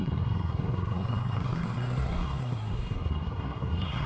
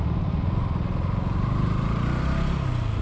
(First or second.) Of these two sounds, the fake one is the first